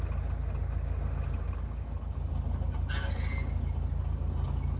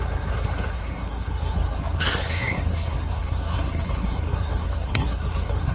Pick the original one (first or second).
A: first